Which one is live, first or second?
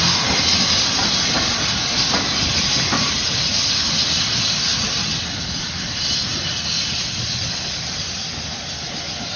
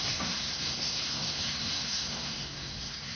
first